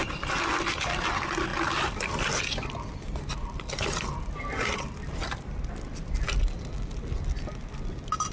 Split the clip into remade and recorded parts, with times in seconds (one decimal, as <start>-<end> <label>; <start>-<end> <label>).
0.0-1.5 recorded; 1.5-5.2 remade; 5.2-8.3 recorded